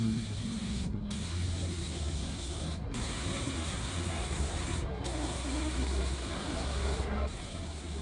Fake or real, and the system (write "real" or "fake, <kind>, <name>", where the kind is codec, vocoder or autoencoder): fake, codec, SNAC